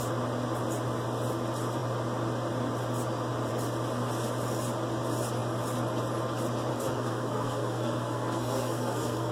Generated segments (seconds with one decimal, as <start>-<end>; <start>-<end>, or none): 6.7-9.3